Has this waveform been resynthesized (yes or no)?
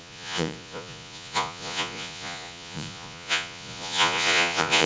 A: yes